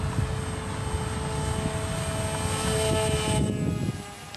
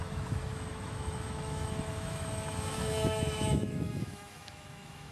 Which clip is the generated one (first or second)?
second